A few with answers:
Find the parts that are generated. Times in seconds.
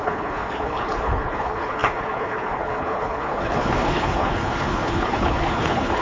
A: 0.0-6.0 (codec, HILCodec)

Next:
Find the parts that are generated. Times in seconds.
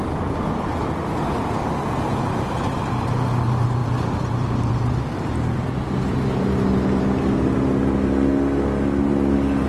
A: 3.8-6.4 (vocoder, BigVGAN v2)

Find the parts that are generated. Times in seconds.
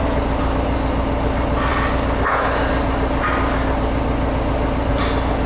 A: none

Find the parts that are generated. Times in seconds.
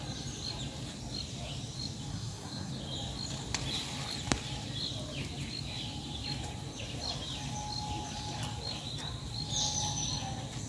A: 2.1-2.7 (codec, SNAC)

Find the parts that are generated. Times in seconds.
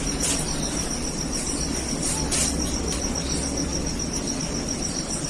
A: none